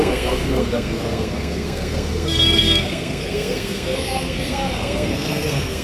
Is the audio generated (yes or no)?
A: yes